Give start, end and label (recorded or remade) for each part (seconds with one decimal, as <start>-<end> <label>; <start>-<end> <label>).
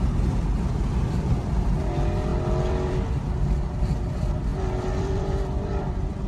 0.0-2.3 recorded; 2.3-3.3 remade; 3.3-4.5 recorded; 4.5-6.3 remade